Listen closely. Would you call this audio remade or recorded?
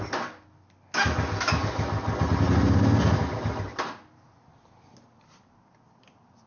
recorded